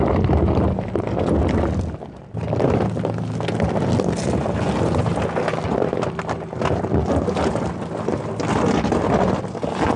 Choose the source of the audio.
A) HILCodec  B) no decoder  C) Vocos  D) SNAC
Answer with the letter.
B